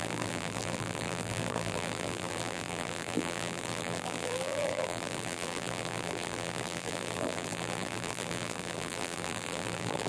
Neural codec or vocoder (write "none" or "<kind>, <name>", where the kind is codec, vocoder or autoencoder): vocoder, BigVGAN v2